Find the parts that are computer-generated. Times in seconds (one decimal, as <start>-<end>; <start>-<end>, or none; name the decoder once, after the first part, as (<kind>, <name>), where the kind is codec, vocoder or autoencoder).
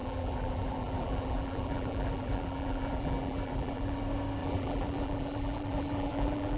0.0-4.0 (vocoder, BigVGAN v2); 4.4-6.6